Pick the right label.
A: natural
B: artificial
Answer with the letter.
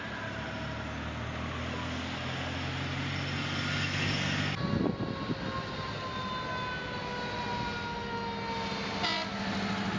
A